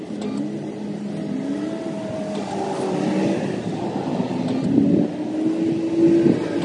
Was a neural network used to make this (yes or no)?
no